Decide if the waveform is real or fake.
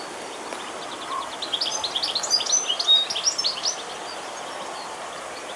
real